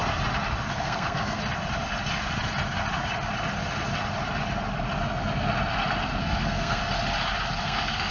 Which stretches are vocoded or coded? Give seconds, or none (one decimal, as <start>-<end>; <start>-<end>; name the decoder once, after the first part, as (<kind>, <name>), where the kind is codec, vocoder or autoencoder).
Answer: 0.7-1.4 (codec, SNAC); 6.2-6.8; 7.6-8.1